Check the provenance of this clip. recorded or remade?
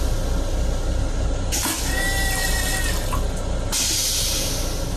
recorded